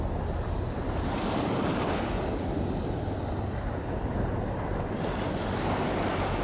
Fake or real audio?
real